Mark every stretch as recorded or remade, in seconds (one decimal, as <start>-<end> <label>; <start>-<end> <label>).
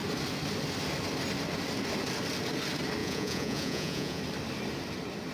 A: 0.0-3.0 recorded; 3.0-4.2 remade; 4.2-5.3 recorded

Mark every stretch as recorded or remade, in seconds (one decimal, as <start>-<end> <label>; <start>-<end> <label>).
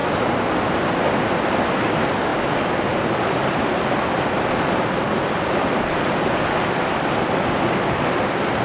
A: 0.0-8.6 recorded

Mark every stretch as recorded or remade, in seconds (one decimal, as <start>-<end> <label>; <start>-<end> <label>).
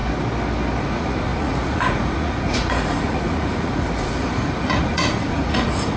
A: 0.0-0.8 recorded; 0.8-6.0 remade